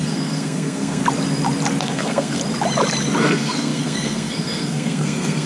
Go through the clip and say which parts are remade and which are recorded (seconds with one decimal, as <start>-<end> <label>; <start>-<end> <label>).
0.0-1.0 remade; 1.0-1.8 recorded; 1.8-2.4 remade; 2.4-3.2 recorded; 3.2-5.5 remade